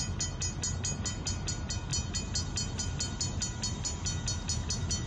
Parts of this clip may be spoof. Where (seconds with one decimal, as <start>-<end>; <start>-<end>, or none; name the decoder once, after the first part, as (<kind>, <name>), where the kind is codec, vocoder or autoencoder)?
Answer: none